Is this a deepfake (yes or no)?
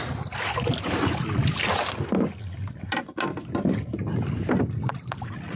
no